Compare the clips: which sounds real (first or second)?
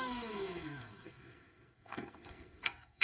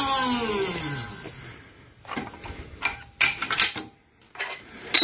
second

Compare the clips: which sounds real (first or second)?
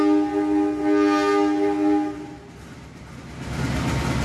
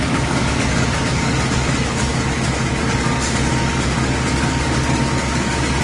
first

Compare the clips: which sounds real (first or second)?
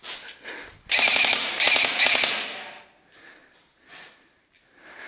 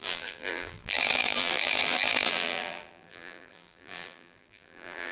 first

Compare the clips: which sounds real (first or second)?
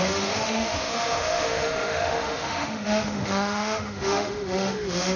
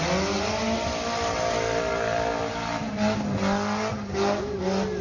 second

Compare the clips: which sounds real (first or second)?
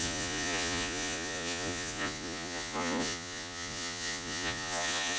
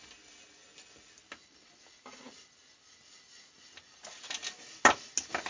second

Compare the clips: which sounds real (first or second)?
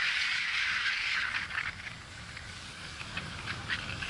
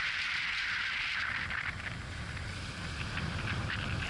second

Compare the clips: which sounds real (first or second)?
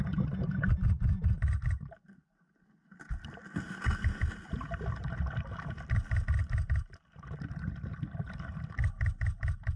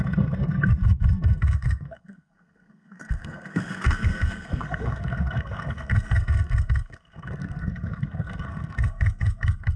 first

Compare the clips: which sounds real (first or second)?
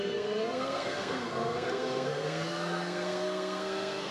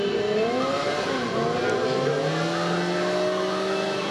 second